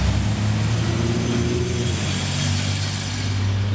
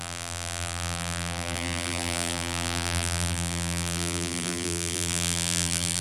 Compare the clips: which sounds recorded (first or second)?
first